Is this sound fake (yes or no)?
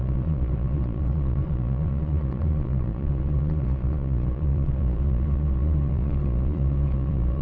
yes